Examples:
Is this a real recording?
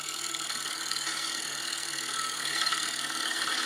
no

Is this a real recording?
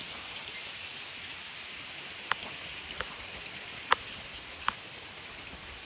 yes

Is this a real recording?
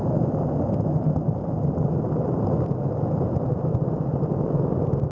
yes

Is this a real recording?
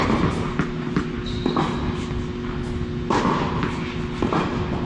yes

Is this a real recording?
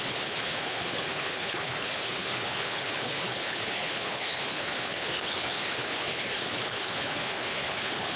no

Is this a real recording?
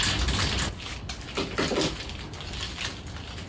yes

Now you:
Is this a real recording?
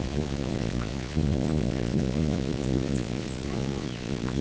no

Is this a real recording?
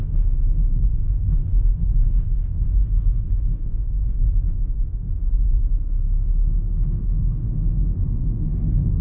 no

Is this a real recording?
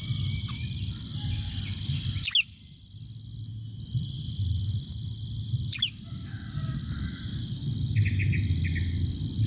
yes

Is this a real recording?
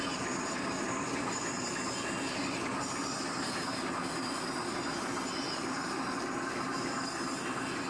yes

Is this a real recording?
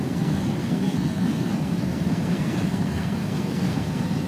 no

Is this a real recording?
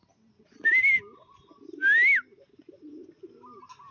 yes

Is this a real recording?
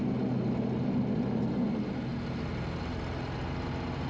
yes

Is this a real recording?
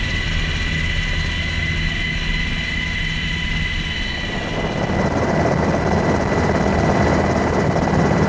yes